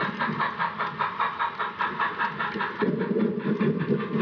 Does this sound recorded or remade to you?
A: recorded